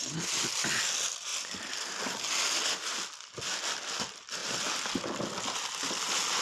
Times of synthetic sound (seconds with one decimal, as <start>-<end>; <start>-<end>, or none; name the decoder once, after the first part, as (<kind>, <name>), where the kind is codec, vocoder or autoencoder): none

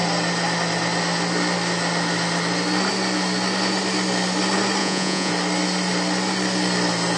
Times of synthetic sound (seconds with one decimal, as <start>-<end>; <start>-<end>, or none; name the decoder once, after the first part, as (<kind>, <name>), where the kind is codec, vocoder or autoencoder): 4.8-5.3 (vocoder, Vocos)